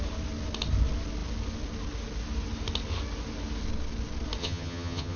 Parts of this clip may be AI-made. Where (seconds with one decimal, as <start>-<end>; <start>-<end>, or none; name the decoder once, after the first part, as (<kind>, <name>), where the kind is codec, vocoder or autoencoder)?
4.4-5.2 (vocoder, HiFi-GAN)